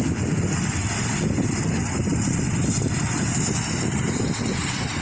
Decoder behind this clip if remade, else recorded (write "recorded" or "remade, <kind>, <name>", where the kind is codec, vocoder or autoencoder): recorded